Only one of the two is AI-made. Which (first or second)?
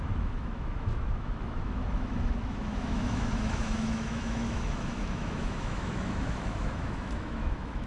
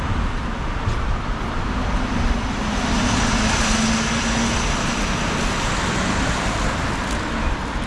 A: first